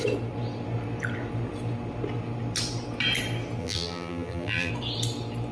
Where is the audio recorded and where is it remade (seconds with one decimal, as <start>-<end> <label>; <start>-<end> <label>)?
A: 0.0-3.6 recorded; 3.6-4.7 remade; 4.7-5.5 recorded